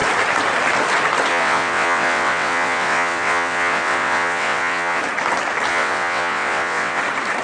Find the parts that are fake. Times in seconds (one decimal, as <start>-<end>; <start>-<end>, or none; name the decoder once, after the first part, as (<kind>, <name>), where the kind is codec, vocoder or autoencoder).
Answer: 1.3-5.0 (vocoder, WaveNeXt); 5.7-7.0